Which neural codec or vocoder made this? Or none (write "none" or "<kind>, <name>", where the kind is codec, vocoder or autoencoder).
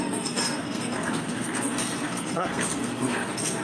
codec, SNAC